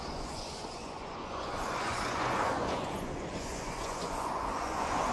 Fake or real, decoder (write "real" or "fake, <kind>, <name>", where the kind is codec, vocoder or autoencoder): fake, vocoder, Vocos